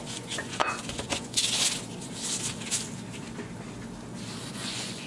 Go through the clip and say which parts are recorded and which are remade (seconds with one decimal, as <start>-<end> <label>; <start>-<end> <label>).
0.0-1.4 remade; 1.4-4.5 recorded; 4.5-5.1 remade